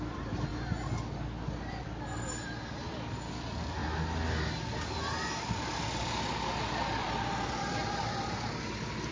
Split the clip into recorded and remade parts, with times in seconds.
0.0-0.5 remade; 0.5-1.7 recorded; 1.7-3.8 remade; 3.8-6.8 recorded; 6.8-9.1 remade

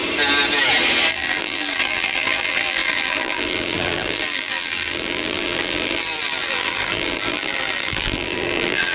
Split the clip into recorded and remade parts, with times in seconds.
0.0-1.1 recorded; 1.1-8.9 remade

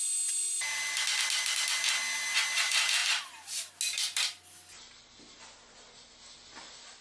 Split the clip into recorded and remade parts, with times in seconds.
0.0-3.0 recorded; 3.0-3.7 remade; 3.7-7.0 recorded

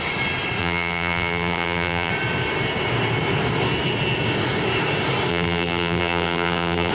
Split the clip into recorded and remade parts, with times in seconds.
0.0-0.6 recorded; 0.6-2.1 remade; 2.1-5.3 recorded; 5.3-6.9 remade